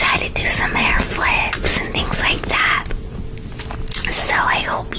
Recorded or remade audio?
recorded